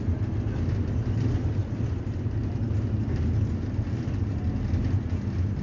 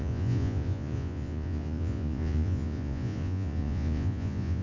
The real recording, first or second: first